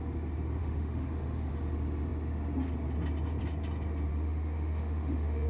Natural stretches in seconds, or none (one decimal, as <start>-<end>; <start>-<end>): 0.0-0.6; 1.5-4.1